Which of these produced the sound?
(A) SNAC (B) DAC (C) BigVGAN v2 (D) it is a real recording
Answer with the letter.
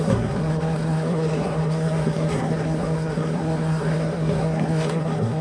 A